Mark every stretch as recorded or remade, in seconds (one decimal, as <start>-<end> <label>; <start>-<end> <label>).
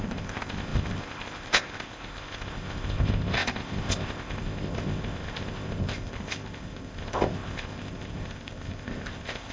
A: 0.0-9.5 remade